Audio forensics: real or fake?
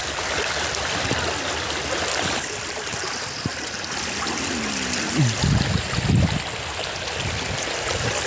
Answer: real